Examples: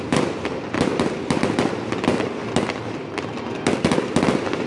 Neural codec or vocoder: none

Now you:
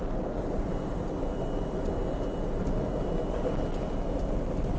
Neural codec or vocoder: none